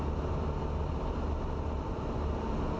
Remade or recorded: recorded